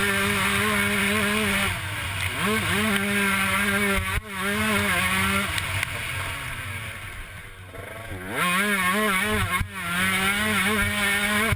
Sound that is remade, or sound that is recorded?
recorded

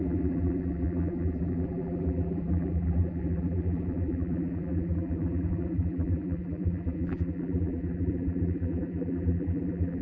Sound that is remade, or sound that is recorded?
remade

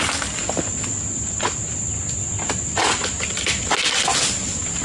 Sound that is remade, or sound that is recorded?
recorded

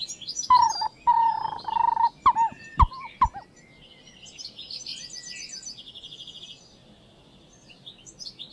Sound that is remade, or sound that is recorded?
recorded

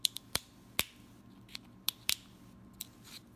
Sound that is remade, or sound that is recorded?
recorded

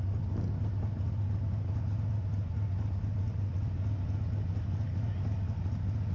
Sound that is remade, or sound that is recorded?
recorded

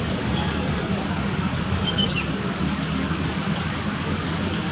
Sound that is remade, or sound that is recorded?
remade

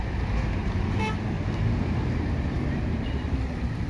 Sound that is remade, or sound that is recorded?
recorded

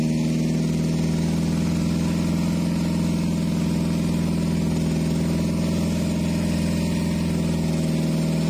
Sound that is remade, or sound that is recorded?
recorded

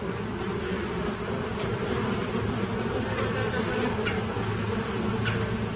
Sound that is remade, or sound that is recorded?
recorded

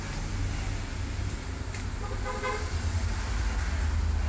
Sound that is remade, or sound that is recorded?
recorded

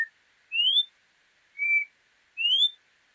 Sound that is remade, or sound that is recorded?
recorded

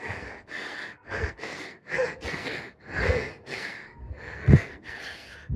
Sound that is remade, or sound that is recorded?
remade